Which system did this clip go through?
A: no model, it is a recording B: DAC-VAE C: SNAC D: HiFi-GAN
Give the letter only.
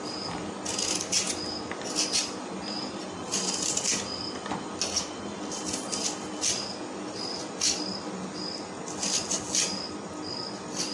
A